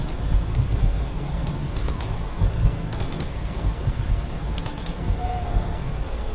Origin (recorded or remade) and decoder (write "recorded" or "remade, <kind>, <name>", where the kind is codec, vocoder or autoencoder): remade, codec, SNAC